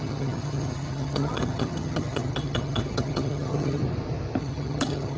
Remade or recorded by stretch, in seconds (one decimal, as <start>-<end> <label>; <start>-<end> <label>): 0.0-3.8 remade; 3.8-4.4 recorded; 4.4-5.2 remade